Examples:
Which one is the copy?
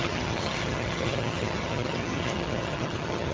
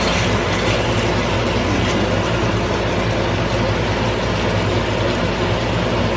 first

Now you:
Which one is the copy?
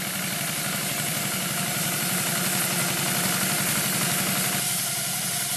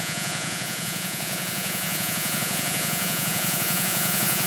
second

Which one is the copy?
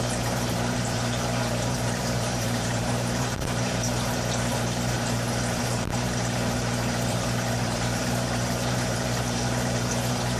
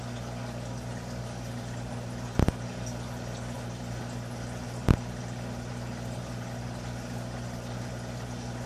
first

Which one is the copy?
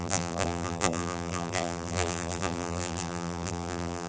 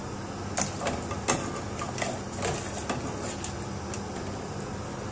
first